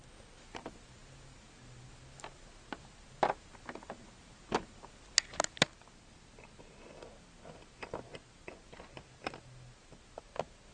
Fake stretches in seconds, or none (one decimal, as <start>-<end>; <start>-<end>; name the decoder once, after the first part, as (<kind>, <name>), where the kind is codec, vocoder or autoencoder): none